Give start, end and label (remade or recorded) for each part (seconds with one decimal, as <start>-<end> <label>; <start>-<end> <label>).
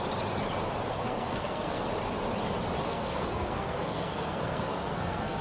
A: 0.0-0.9 recorded; 0.9-1.9 remade; 1.9-2.8 recorded; 2.8-5.4 remade